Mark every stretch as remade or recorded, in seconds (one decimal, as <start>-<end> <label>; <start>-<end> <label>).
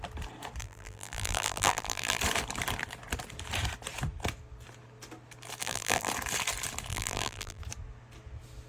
0.0-0.6 recorded; 0.6-2.2 remade; 2.2-5.6 recorded; 5.6-6.1 remade; 6.1-6.9 recorded; 6.9-7.6 remade; 7.6-8.7 recorded